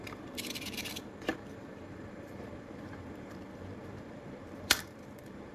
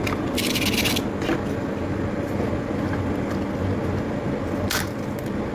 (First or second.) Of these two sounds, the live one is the second